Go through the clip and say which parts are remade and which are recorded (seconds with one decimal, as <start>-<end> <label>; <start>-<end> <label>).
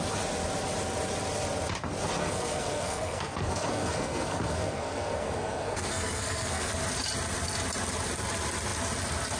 0.0-2.2 recorded; 2.2-6.7 remade; 6.7-9.4 recorded